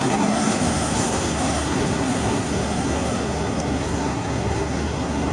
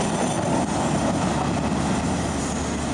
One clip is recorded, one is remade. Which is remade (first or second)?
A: first